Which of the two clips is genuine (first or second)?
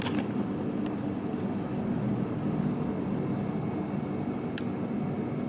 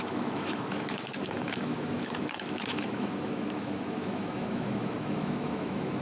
first